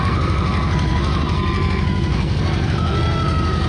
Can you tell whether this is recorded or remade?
remade